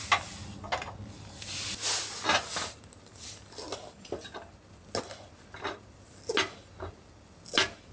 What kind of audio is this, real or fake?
real